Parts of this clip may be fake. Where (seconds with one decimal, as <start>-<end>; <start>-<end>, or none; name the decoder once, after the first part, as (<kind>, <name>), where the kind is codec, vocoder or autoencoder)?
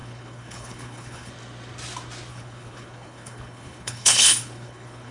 0.0-1.3 (codec, HILCodec); 2.3-5.1